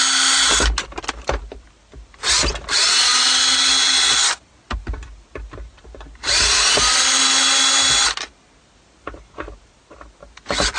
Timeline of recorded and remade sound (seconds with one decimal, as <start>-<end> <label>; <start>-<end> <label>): 0.0-10.8 recorded